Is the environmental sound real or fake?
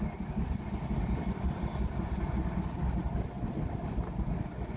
real